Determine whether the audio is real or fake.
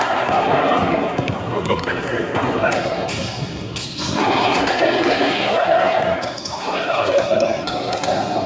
fake